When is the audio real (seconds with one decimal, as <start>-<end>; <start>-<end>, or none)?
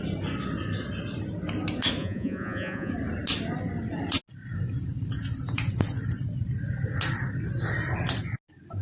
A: 0.0-2.0; 2.9-8.8